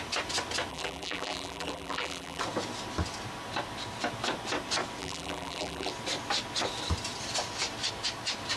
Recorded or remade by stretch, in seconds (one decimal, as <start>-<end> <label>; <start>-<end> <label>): 0.0-0.7 recorded; 0.7-2.4 remade; 2.4-5.0 recorded; 5.0-5.9 remade; 5.9-8.6 recorded